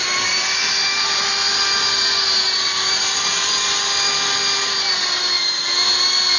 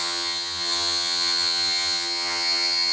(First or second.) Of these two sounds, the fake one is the second